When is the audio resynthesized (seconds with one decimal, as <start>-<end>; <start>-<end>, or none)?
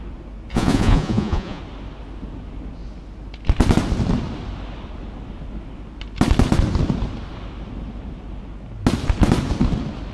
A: 0.5-1.6